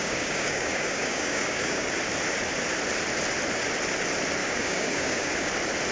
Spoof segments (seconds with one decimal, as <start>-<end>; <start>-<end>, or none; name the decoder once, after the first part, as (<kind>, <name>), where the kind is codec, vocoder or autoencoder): 0.0-1.9 (codec, DAC); 4.4-5.5